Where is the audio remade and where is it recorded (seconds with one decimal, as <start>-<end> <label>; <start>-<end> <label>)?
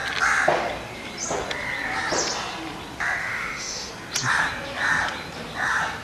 0.0-3.2 recorded; 3.2-3.9 remade; 3.9-6.0 recorded